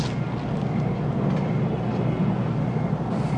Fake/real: real